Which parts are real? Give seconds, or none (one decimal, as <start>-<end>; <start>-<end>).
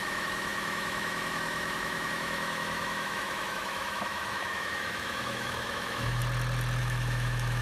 6.2-6.8